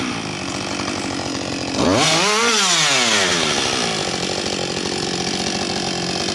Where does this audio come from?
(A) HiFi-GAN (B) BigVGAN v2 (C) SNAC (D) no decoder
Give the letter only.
D